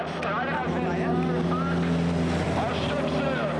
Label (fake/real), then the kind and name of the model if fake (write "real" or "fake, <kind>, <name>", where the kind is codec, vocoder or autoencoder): real